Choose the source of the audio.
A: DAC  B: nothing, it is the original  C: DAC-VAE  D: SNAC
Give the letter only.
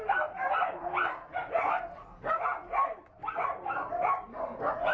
B